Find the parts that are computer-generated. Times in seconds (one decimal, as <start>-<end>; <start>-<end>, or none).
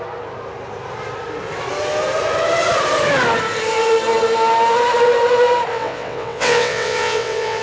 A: 5.7-7.6